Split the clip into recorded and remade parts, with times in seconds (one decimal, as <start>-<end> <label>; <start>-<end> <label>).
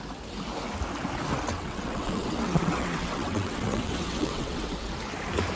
0.0-1.5 recorded; 1.5-4.9 remade; 4.9-5.6 recorded